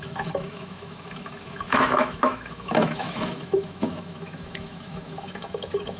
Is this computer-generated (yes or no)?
yes